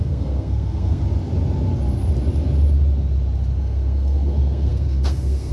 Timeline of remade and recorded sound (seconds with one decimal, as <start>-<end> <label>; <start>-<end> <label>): 0.0-1.0 remade; 1.0-3.6 recorded; 3.6-5.5 remade